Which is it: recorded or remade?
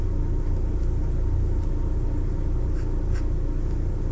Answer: recorded